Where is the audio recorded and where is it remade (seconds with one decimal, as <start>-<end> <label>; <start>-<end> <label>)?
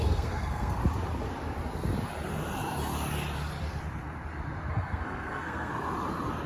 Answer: 0.0-0.8 remade; 0.8-4.7 recorded; 4.7-5.7 remade; 5.7-6.5 recorded